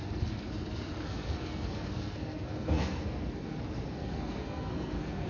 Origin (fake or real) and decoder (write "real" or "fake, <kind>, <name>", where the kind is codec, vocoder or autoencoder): fake, codec, SNAC